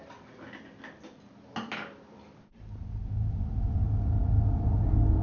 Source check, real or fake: real